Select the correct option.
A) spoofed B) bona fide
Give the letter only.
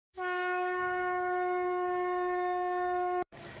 A